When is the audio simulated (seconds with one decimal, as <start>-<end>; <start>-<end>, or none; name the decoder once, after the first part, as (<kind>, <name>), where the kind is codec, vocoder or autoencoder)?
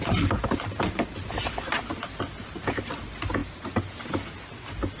none